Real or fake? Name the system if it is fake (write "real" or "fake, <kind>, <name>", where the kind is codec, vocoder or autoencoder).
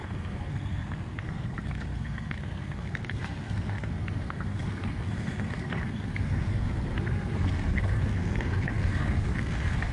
fake, codec, SNAC